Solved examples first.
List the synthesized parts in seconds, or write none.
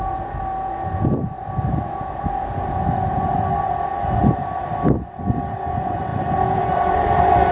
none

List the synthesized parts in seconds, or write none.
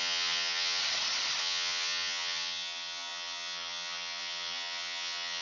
0.0-0.8 (vocoder, HiFi-GAN); 1.4-5.4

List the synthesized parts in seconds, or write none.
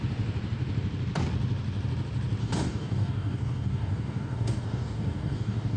2.4-5.8 (codec, DAC)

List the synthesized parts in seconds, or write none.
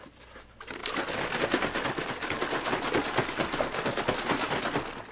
none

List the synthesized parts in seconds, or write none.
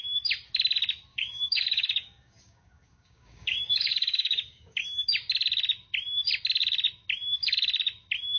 1.1-4.8 (codec, DAC)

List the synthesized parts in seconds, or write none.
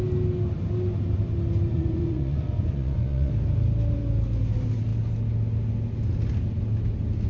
1.7-3.3 (vocoder, Vocos)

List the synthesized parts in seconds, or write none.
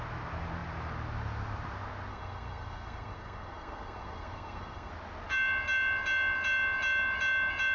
2.1-4.9 (codec, SNAC)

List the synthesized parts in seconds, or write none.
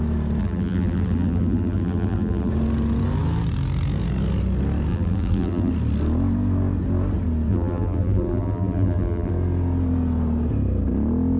0.4-2.5 (vocoder, BigVGAN v2); 4.9-5.7; 7.5-9.3